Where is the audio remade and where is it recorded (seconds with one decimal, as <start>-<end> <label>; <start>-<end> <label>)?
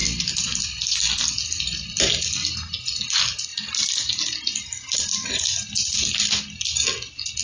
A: 0.0-0.6 remade; 0.6-7.4 recorded